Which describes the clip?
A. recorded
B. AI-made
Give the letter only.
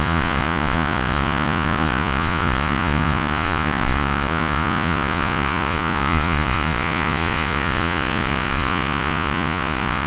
B